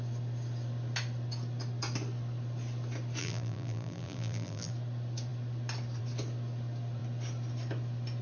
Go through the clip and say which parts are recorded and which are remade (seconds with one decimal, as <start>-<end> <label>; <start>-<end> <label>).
0.0-3.2 recorded; 3.2-4.7 remade; 4.7-8.2 recorded